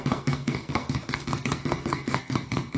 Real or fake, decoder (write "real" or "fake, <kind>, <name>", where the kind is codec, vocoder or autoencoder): fake, codec, SNAC